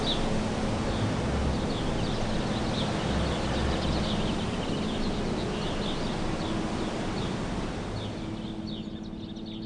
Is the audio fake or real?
real